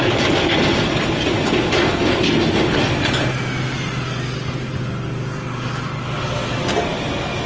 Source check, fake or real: real